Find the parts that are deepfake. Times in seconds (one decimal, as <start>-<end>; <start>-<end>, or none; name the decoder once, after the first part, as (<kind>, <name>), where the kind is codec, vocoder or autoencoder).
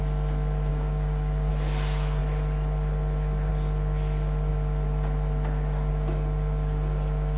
0.7-1.5 (codec, DAC)